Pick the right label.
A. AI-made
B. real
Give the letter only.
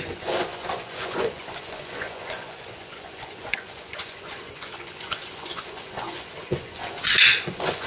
A